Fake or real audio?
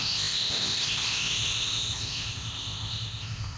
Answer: fake